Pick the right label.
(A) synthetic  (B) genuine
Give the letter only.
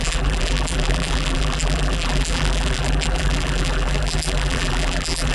A